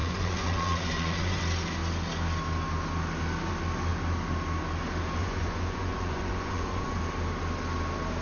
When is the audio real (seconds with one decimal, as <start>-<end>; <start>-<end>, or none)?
1.4-5.2; 7.0-8.2